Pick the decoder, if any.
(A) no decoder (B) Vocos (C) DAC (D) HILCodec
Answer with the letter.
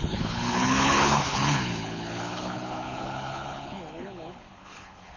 D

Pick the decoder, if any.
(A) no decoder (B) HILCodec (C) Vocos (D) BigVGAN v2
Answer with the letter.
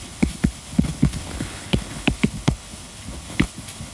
B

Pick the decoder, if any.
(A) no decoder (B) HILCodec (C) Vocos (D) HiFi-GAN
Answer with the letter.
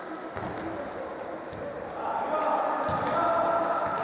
A